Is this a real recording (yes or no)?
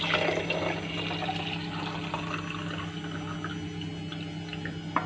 yes